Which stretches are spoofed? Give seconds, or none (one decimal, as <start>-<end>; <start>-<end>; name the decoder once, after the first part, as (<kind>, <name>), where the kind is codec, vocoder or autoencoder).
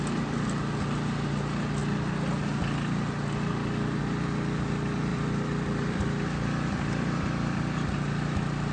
5.1-7.9 (vocoder, BigVGAN v2)